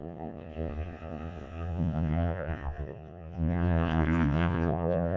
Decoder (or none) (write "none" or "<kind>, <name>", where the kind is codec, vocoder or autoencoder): vocoder, Vocos